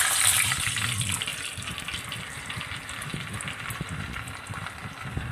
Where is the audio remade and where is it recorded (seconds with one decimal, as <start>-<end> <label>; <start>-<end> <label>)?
0.0-5.3 recorded